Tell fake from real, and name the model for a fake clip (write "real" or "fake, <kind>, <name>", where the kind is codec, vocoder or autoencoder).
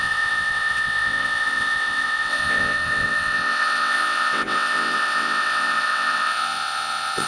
fake, vocoder, WaveNeXt